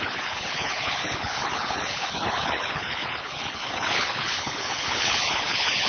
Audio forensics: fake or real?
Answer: fake